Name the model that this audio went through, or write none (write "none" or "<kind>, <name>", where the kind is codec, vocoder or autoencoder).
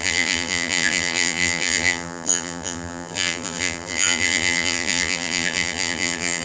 vocoder, BigVGAN v2